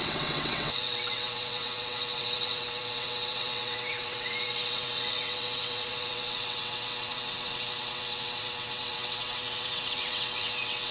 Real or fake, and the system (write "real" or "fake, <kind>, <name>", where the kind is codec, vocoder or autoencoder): fake, vocoder, WaveNeXt